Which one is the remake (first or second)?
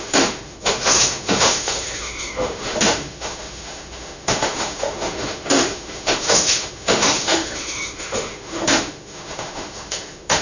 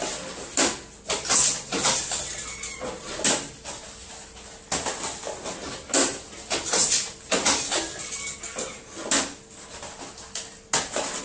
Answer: first